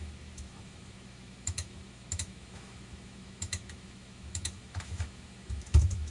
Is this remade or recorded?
remade